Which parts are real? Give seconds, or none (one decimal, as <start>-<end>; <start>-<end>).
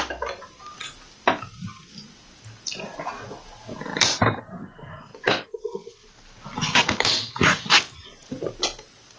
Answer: 0.0-3.9; 4.4-6.8; 7.6-9.2